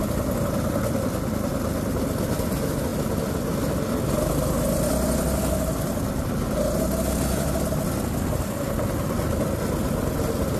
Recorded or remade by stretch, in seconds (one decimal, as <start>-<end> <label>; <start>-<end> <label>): 0.0-10.6 recorded